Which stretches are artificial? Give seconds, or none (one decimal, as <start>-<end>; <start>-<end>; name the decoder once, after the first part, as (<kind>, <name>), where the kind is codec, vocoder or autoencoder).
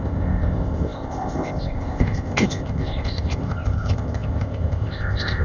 0.0-5.4 (codec, ZipCodec)